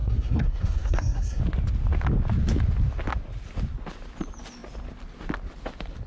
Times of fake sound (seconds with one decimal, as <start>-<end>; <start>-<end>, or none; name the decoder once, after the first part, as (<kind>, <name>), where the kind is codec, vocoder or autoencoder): 0.0-1.4 (codec, SNAC)